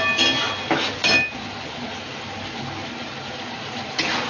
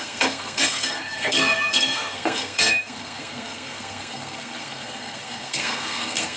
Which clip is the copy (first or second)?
second